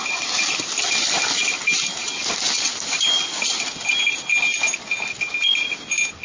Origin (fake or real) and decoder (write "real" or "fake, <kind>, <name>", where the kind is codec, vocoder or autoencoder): real